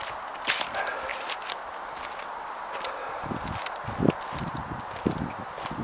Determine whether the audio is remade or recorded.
remade